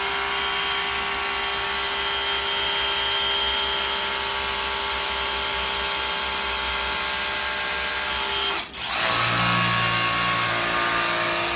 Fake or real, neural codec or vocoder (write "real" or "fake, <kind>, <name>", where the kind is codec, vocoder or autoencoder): real